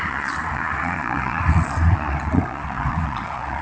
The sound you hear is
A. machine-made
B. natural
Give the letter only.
A